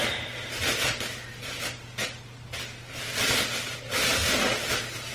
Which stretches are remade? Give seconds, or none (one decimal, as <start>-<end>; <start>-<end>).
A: none